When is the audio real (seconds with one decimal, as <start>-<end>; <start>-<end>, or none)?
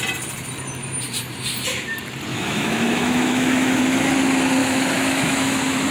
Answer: 0.0-2.3; 3.8-4.6